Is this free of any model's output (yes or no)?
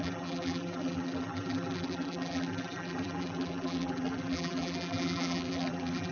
no